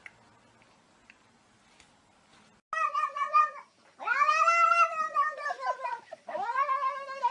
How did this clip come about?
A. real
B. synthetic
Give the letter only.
A